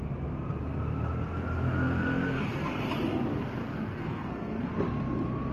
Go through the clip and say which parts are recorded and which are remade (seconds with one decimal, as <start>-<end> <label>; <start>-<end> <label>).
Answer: 0.0-3.6 recorded; 3.6-4.6 remade; 4.6-5.5 recorded